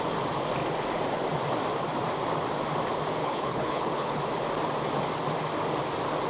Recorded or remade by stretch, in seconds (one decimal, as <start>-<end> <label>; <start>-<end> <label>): 0.0-3.2 recorded; 3.2-4.2 remade; 4.2-6.3 recorded